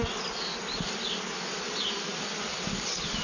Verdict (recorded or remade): recorded